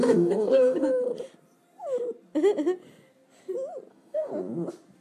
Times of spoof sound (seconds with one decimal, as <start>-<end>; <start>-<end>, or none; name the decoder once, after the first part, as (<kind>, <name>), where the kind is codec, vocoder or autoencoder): 0.0-0.9 (codec, DAC); 3.9-4.3